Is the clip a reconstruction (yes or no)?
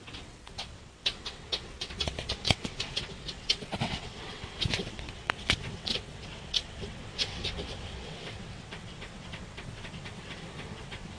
yes